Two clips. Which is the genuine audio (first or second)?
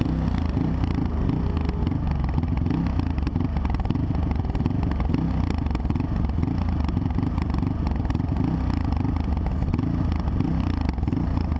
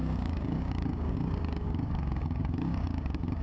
first